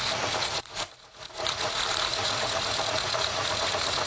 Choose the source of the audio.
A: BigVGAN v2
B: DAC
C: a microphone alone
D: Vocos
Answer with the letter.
D